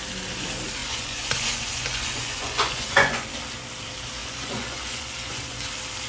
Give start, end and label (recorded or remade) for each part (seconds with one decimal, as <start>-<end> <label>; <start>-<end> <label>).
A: 0.0-0.8 recorded; 0.8-3.3 remade; 3.3-4.2 recorded; 4.2-5.6 remade; 5.6-6.1 recorded